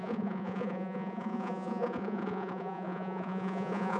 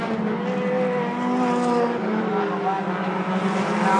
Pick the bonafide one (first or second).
second